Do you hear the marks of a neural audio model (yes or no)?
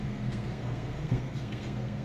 yes